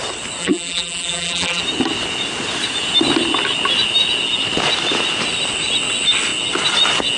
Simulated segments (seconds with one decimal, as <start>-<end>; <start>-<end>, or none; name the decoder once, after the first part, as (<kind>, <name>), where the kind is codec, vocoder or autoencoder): 0.4-1.6 (vocoder, BigVGAN v2)